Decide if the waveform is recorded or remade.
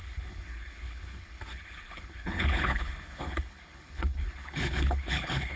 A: remade